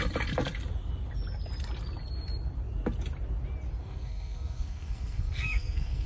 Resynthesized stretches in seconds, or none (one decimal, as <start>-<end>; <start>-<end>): 3.8-6.1